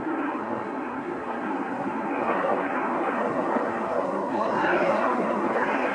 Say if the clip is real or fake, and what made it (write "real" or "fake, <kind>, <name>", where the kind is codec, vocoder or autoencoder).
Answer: fake, codec, SNAC